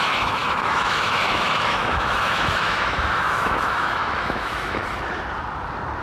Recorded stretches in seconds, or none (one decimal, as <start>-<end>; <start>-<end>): 4.8-6.0